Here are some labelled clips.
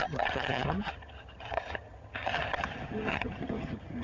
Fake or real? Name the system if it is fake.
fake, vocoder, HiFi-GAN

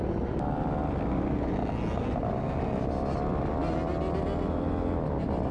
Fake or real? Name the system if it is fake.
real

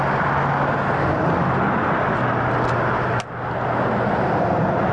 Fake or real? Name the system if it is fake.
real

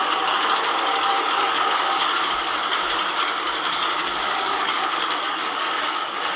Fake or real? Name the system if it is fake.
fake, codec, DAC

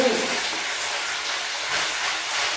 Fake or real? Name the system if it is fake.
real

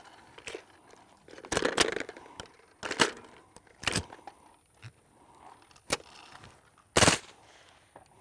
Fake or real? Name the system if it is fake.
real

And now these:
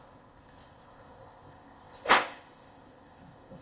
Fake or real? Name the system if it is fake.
fake, codec, ZipCodec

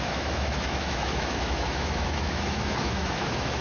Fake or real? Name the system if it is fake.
fake, autoencoder, DAC-VAE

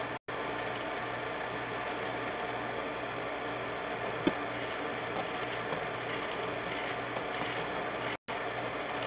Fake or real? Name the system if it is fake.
real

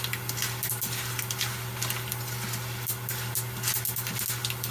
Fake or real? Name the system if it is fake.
real